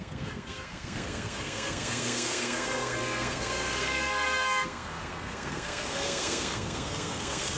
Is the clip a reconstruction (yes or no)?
yes